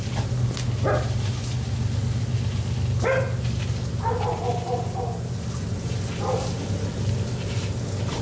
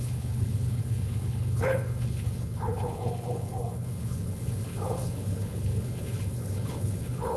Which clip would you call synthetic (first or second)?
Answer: second